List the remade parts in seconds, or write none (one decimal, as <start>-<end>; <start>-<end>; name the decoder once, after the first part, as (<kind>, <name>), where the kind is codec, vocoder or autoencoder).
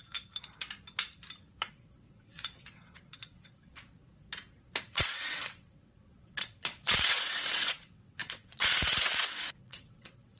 1.7-3.8 (vocoder, WaveNeXt); 4.8-10.4